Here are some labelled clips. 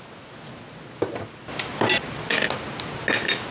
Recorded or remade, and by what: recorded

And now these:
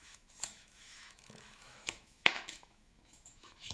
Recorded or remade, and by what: remade, autoencoder, DAC-VAE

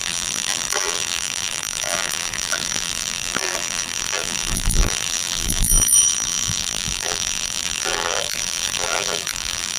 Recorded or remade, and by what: remade, vocoder, BigVGAN v2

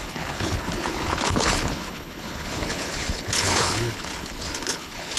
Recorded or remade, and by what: remade, codec, HILCodec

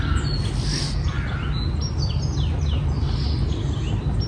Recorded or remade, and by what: recorded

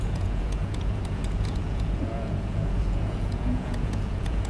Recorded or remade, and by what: remade, vocoder, Vocos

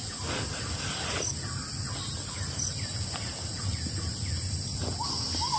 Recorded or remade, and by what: recorded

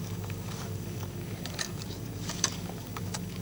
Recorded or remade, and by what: remade, codec, DAC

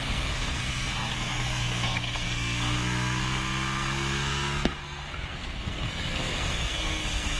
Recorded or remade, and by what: remade, codec, SNAC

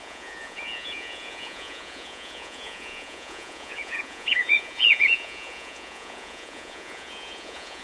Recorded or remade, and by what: remade, vocoder, Vocos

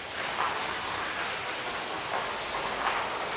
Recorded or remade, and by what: recorded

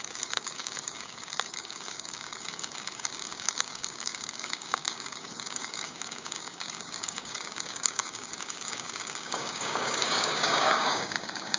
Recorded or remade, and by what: remade, codec, DAC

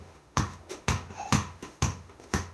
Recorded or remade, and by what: remade, autoencoder, DAC-VAE